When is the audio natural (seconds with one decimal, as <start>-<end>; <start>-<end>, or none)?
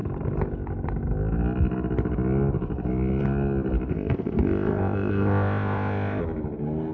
0.0-3.9; 6.2-6.9